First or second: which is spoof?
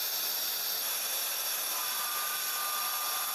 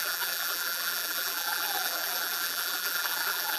second